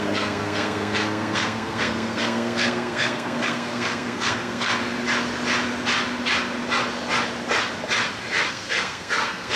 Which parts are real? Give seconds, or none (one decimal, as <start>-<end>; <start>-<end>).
4.7-8.5